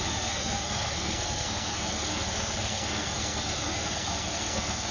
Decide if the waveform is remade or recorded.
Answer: remade